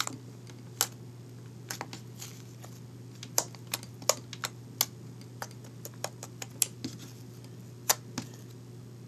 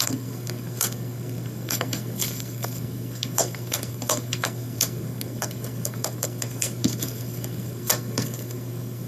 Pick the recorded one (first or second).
first